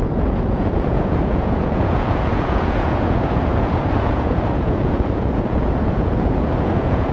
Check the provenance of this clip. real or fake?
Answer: fake